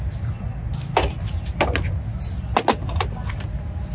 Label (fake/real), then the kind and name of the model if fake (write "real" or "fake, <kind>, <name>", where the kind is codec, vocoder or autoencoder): real